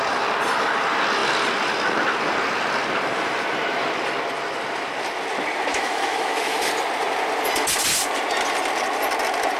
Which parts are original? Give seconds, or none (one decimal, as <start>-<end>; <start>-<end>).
0.0-5.7; 6.7-9.6